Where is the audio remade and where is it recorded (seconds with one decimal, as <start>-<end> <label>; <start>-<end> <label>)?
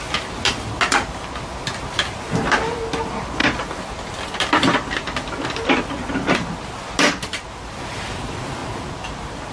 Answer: 0.0-9.5 recorded